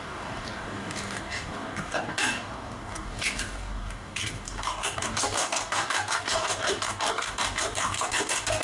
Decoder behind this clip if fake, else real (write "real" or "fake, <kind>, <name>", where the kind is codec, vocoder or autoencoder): fake, codec, DAC